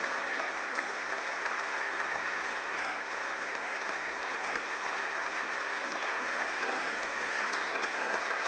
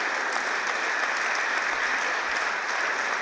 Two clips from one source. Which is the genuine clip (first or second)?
second